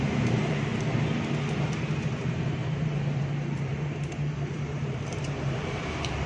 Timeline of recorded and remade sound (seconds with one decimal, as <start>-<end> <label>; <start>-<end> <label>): 0.0-0.7 remade; 0.7-2.0 recorded; 2.0-6.3 remade